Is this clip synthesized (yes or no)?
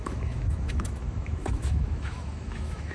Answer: yes